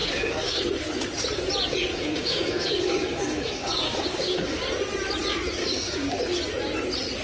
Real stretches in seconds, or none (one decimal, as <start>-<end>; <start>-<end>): 0.6-1.9; 4.6-5.6; 6.1-7.2